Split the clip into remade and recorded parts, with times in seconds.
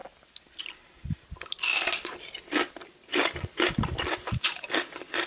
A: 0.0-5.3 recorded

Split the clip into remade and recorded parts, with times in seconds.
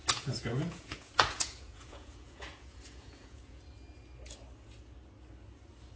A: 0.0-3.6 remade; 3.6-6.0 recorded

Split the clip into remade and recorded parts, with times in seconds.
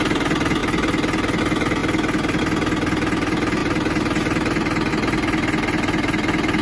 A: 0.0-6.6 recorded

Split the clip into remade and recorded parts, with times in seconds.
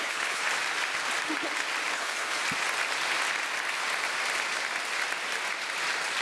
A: 0.0-0.4 remade; 0.4-1.9 recorded; 1.9-2.4 remade; 2.4-6.2 recorded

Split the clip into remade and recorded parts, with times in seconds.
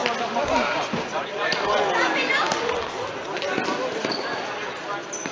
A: 0.0-5.3 recorded